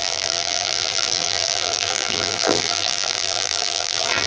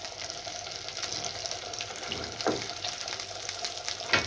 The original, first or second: second